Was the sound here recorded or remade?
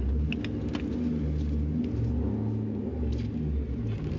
recorded